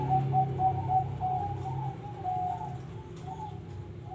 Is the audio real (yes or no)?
yes